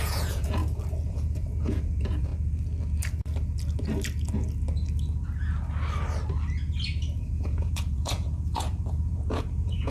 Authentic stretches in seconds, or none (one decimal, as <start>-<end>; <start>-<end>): 0.6-1.1; 2.3-7.3